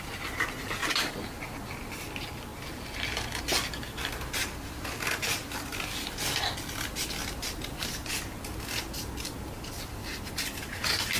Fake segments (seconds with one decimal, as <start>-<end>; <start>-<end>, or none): none